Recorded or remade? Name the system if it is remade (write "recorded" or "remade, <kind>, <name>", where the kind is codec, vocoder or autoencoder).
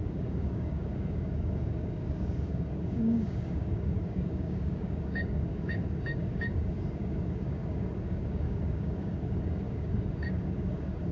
remade, codec, DAC